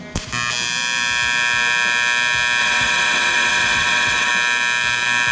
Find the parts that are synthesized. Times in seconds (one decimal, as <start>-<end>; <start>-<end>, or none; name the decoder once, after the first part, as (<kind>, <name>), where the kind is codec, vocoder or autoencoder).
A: 2.6-4.3 (vocoder, WaveNeXt)